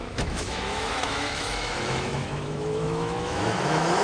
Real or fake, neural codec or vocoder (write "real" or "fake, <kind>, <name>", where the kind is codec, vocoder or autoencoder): fake, autoencoder, DAC-VAE